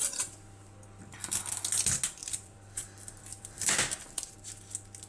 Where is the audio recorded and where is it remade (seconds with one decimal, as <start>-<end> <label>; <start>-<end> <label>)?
0.0-2.2 recorded; 2.2-4.0 remade; 4.0-5.1 recorded